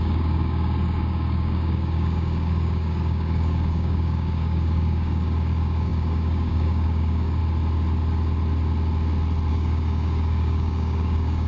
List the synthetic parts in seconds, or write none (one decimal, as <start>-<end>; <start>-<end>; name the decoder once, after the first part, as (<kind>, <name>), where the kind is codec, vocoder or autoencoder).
0.0-7.4 (codec, DAC); 9.5-11.5